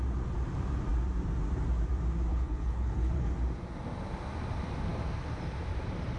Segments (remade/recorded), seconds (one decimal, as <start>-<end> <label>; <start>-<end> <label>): 0.0-2.3 recorded; 2.3-3.3 remade; 3.3-6.2 recorded